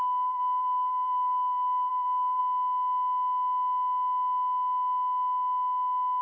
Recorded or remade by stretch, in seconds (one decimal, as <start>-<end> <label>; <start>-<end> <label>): 0.0-2.4 remade; 2.4-6.2 recorded